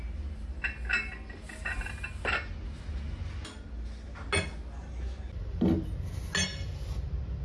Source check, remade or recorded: recorded